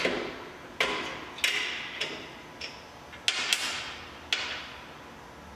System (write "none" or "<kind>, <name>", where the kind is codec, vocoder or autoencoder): none